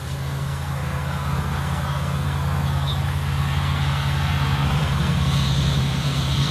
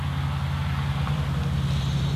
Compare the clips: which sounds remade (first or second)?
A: first